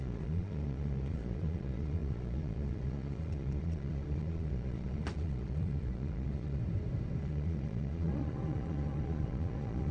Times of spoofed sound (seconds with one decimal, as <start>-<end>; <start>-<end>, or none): 0.0-6.6; 7.2-9.9